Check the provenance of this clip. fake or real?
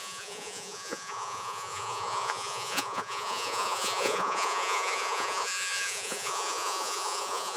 fake